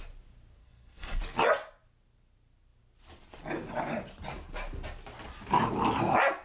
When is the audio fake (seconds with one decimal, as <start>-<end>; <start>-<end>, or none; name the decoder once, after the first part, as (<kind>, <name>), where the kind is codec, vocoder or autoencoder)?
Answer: 0.6-1.2 (codec, SNAC)